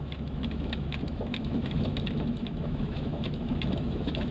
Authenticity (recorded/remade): remade